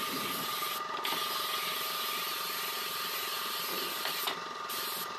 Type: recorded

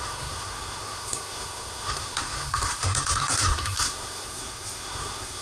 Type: remade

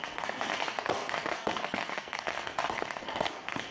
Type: remade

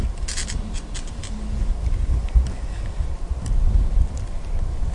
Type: recorded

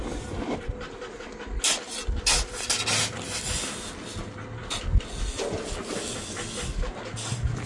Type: recorded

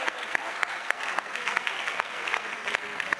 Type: remade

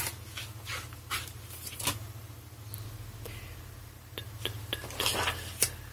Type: recorded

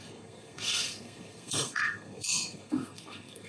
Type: remade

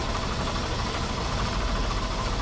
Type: recorded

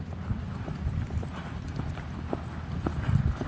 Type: recorded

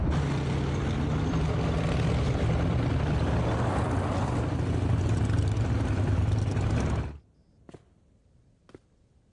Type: recorded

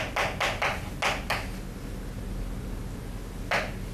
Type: recorded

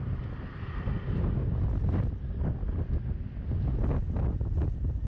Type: recorded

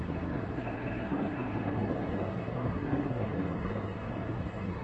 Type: remade